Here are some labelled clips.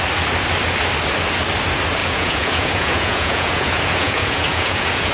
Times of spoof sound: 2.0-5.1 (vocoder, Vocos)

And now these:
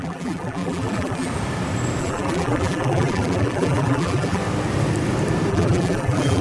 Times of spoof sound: 0.0-1.3 (vocoder, BigVGAN v2); 2.0-4.4; 5.5-6.4

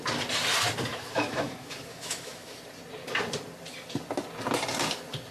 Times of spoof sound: 0.9-2.6 (autoencoder, DAC-VAE)

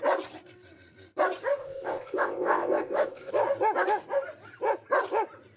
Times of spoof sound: 1.6-3.3 (codec, ZipCodec)

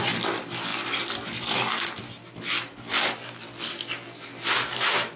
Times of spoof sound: 0.0-5.2 (vocoder, BigVGAN v2)

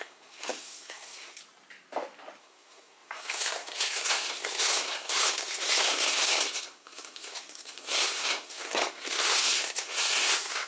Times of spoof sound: 0.0-1.4 (codec, SNAC); 2.4-10.7

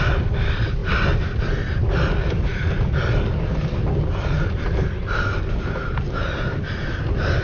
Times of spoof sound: 0.8-4.9 (vocoder, BigVGAN v2)